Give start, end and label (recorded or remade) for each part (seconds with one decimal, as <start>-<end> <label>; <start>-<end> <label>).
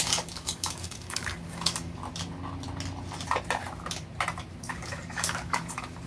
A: 0.0-2.0 remade; 2.0-4.6 recorded; 4.6-6.1 remade